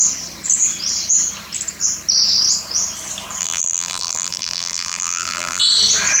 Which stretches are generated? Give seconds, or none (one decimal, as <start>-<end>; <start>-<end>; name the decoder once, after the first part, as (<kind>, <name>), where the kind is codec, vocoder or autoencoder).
3.4-5.6 (vocoder, BigVGAN v2)